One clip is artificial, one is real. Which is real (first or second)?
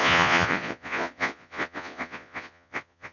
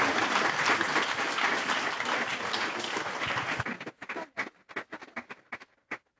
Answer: second